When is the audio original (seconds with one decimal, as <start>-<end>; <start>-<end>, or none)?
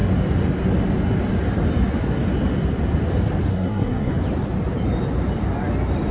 0.0-3.5; 4.1-6.1